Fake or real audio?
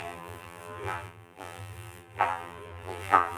fake